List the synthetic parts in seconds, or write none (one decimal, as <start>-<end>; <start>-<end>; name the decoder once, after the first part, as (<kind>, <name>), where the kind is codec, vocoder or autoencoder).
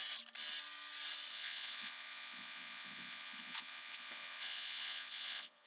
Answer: 1.3-5.7 (vocoder, Vocos)